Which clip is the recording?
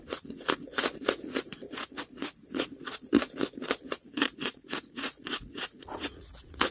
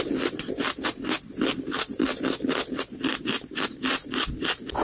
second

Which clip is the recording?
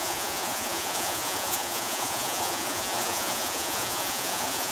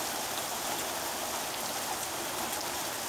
second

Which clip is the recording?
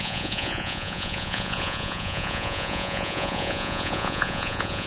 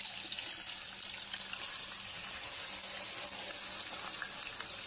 second